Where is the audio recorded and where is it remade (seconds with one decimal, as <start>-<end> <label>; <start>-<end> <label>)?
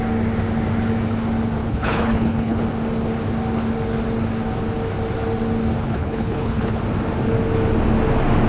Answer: 0.0-1.6 recorded; 1.6-2.6 remade; 2.6-5.8 recorded; 5.8-6.8 remade; 6.8-8.5 recorded